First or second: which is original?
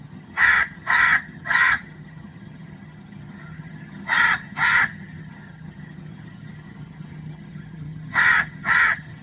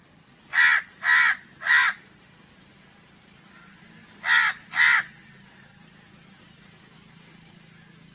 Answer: second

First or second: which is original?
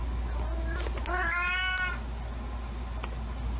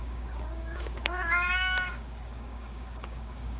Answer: first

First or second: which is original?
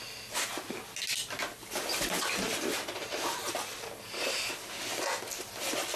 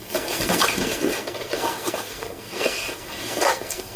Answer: first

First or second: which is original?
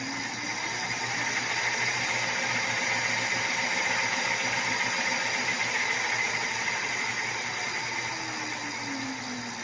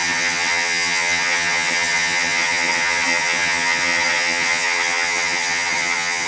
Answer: first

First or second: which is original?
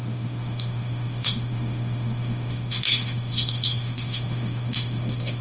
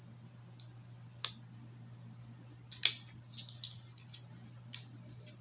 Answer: second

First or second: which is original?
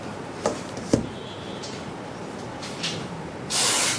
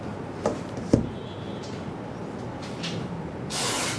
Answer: second